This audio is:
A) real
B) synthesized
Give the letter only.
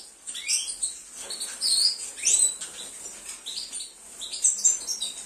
A